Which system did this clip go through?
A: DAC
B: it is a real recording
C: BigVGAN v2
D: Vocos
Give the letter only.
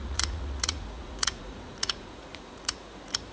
D